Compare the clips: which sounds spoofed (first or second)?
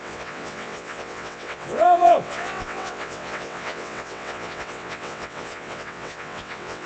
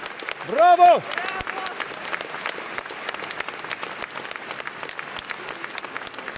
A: first